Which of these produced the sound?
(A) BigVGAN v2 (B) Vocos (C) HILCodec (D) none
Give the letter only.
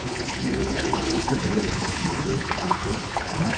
C